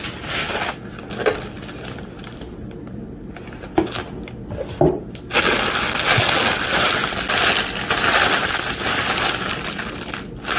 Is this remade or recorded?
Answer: recorded